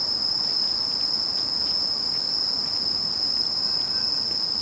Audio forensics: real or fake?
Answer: real